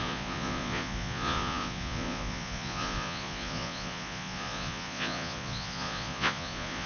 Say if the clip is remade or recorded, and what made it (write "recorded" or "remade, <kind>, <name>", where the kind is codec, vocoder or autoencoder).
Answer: remade, vocoder, Vocos